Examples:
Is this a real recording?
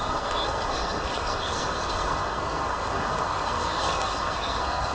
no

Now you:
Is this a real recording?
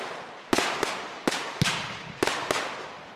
yes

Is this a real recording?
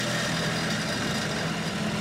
yes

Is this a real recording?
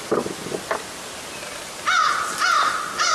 yes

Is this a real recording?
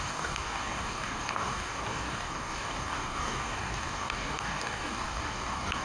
no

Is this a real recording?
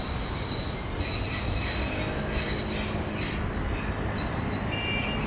yes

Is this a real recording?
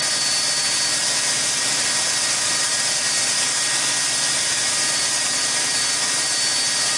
yes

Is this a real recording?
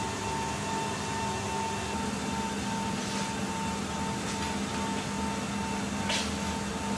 yes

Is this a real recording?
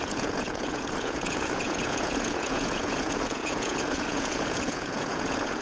no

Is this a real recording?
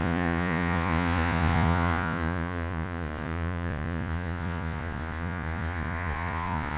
no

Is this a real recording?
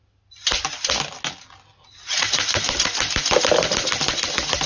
yes